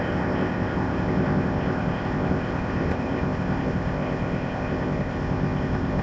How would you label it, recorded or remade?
remade